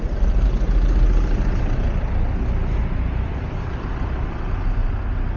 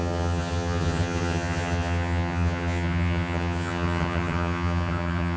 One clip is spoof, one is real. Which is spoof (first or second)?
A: second